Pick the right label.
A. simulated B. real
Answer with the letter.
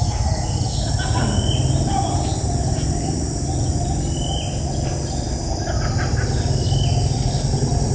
B